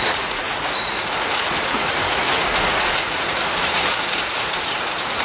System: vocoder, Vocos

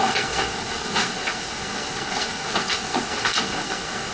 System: codec, SNAC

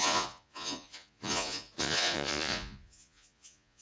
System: vocoder, Vocos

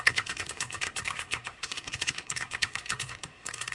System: codec, SNAC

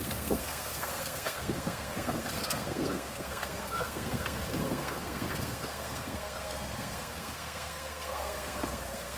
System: codec, SNAC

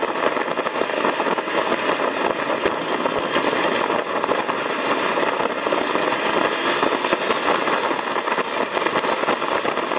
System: none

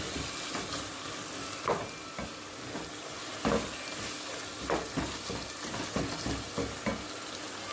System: none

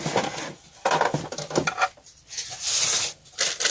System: none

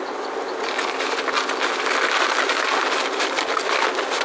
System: none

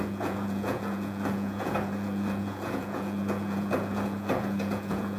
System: vocoder, Vocos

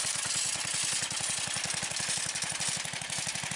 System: none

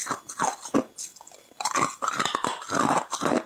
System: none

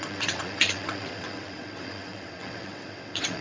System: vocoder, WaveNeXt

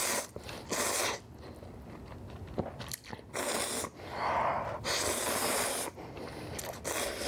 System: none